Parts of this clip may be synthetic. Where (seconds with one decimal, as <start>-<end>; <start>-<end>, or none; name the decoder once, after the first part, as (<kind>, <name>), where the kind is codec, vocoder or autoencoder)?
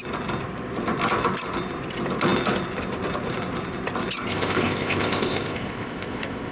4.3-6.5 (codec, ZipCodec)